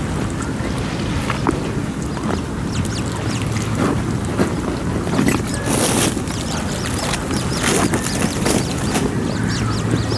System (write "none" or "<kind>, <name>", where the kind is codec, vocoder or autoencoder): none